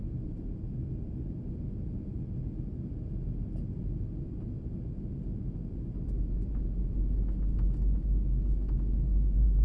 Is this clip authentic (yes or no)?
yes